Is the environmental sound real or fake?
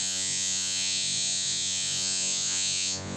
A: fake